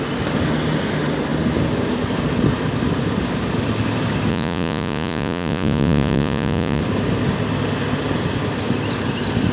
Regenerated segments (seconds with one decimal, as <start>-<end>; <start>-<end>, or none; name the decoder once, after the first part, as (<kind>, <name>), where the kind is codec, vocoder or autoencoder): 4.3-6.8 (vocoder, Vocos)